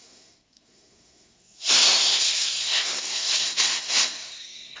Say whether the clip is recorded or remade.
remade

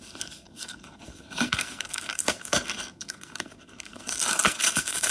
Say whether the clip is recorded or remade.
remade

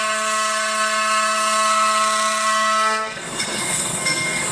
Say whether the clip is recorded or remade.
remade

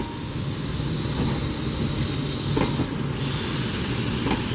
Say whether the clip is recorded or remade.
recorded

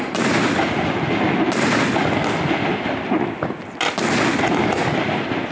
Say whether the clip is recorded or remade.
recorded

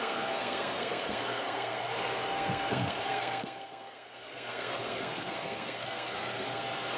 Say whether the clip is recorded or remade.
remade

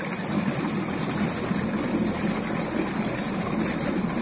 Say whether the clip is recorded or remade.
recorded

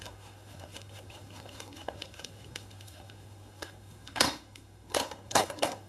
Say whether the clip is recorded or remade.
remade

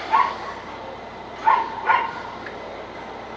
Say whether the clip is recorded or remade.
recorded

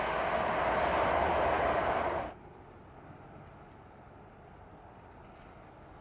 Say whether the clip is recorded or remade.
recorded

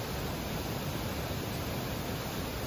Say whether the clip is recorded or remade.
recorded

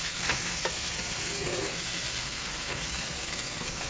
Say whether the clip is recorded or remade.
remade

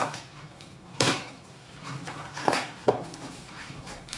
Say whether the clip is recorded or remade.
remade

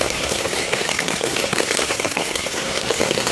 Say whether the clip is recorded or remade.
remade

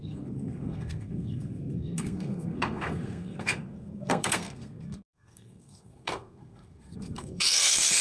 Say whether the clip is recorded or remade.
remade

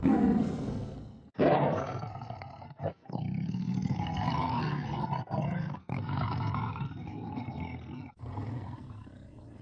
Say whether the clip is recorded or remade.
remade